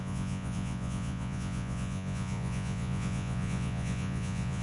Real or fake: fake